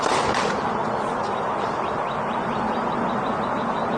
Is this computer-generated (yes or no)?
no